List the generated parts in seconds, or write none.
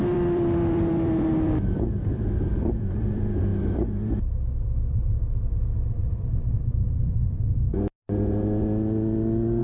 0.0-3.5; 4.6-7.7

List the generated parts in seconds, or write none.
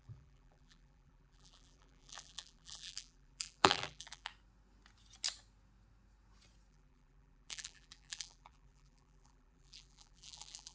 0.0-4.3; 6.7-10.7